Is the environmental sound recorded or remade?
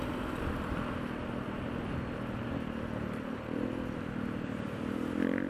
recorded